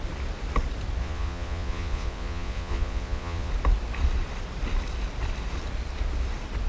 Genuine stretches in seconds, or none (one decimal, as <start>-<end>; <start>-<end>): 0.0-1.0; 3.5-6.7

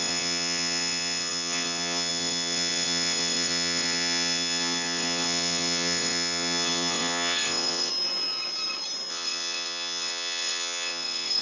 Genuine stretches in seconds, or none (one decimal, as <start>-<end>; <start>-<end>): 7.9-9.1

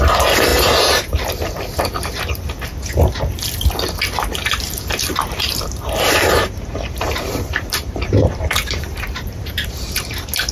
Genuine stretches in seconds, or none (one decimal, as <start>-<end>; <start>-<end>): 0.0-5.1; 9.8-10.5

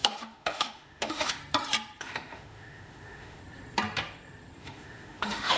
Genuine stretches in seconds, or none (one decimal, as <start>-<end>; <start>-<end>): 1.4-2.0; 3.4-4.6

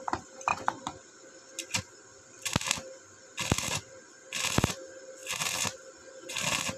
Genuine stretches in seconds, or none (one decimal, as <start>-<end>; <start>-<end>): 0.5-4.6; 5.2-6.1

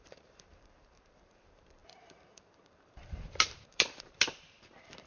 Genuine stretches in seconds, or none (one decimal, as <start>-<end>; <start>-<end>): none

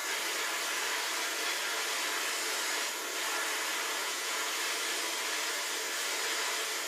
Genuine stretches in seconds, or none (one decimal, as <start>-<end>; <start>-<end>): 0.0-4.0; 4.5-6.9